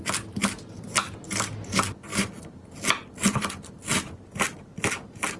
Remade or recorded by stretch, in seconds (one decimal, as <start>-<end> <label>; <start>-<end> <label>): 0.0-5.4 recorded